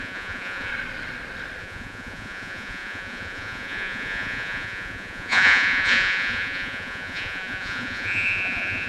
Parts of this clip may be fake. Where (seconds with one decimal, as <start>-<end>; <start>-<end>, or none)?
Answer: 0.0-0.7; 1.6-8.9